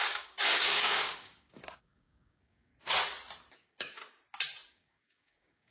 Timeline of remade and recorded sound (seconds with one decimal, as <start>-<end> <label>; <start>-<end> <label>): 0.0-2.7 remade; 2.7-3.5 recorded; 3.5-4.0 remade; 4.0-4.7 recorded; 4.7-5.7 remade